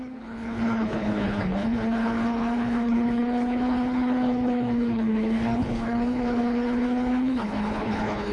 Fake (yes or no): yes